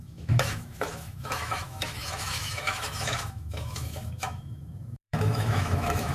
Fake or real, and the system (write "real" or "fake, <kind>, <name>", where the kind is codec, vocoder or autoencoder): fake, autoencoder, DAC-VAE